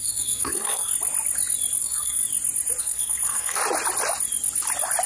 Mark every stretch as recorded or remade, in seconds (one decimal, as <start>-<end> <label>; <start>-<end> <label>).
0.0-0.9 remade; 0.9-1.8 recorded; 1.8-2.2 remade; 2.2-2.8 recorded; 2.8-3.6 remade; 3.6-5.1 recorded